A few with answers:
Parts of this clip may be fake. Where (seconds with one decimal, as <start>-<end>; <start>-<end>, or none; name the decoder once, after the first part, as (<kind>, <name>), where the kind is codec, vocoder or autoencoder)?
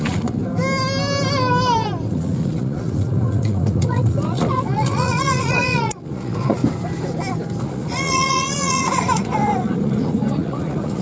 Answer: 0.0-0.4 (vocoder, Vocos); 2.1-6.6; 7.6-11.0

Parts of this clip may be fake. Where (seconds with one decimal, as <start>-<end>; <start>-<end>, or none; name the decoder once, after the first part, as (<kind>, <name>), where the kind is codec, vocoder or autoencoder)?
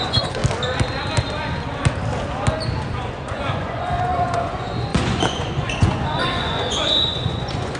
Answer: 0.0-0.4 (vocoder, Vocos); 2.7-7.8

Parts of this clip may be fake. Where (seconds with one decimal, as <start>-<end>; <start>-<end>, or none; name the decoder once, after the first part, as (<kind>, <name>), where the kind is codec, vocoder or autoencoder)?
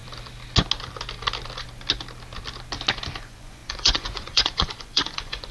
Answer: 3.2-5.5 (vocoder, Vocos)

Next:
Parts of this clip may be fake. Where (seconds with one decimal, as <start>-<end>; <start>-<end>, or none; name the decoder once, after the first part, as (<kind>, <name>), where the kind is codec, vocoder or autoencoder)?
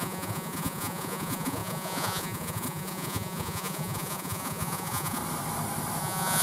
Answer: 0.0-5.2 (vocoder, Vocos); 6.0-6.4